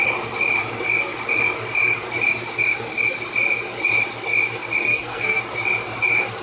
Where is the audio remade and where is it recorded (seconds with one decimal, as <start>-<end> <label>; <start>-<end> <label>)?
0.0-4.8 recorded; 4.8-5.4 remade; 5.4-6.4 recorded